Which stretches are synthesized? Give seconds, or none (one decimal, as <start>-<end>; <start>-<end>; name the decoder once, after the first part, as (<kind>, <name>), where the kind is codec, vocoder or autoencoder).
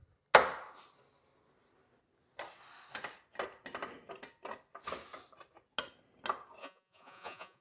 6.6-7.6 (vocoder, Vocos)